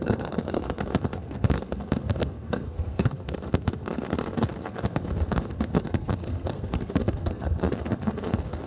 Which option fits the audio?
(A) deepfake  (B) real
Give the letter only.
A